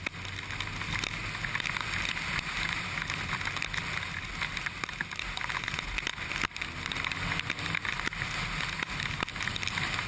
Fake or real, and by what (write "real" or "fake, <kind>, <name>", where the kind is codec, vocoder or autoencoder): real